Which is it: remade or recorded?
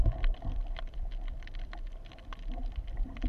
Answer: remade